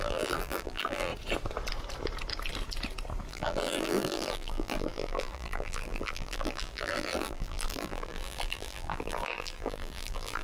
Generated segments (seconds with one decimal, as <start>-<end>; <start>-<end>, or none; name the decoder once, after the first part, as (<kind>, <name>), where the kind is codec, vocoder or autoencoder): 0.0-1.1 (vocoder, BigVGAN v2); 3.3-10.4